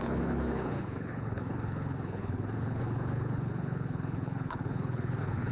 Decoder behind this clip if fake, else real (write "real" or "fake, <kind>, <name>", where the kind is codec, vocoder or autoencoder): fake, codec, HILCodec